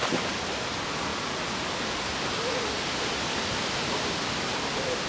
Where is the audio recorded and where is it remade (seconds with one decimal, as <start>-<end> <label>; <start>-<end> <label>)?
0.0-5.1 recorded